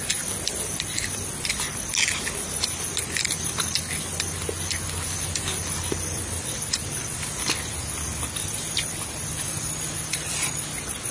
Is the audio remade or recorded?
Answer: recorded